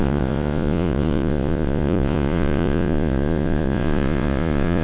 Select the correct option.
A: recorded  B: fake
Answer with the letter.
B